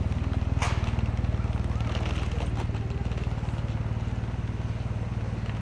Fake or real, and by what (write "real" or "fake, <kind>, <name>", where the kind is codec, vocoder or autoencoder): real